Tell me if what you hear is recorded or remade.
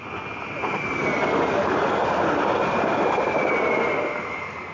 recorded